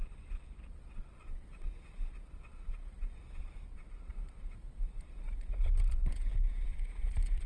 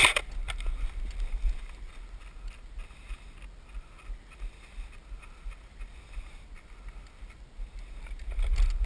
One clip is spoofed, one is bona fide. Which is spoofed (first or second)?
first